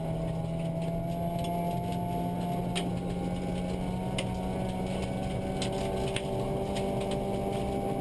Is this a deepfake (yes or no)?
no